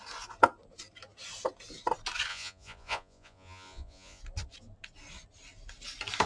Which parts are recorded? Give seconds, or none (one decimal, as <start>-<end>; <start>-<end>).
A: 0.0-2.3; 4.2-6.3